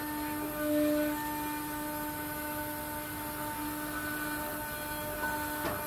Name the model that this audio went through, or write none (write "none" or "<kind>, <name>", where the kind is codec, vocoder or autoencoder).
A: none